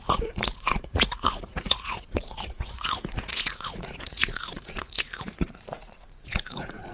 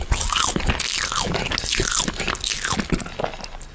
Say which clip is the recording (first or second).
second